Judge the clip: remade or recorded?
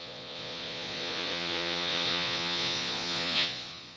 remade